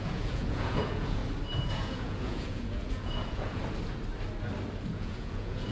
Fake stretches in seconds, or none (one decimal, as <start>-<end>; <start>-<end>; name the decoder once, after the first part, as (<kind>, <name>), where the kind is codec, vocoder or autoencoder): 0.0-1.2 (vocoder, Vocos); 1.7-3.6; 4.9-5.7